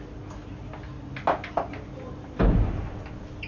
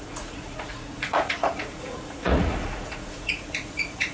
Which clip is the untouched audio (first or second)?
first